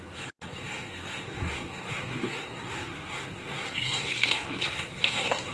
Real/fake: fake